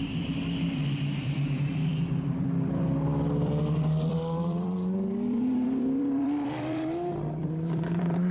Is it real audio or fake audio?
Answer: fake